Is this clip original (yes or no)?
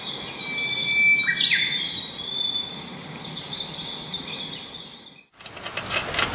yes